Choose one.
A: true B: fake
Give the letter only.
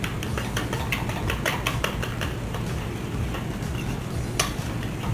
A